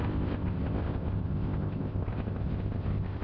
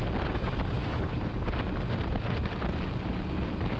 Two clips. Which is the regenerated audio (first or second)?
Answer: first